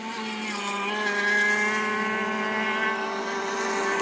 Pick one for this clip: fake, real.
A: real